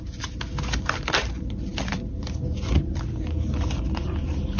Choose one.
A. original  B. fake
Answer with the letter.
A